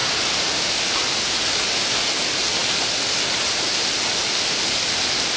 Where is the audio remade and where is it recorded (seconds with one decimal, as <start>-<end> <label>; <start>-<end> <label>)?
0.0-0.5 remade; 0.5-5.4 recorded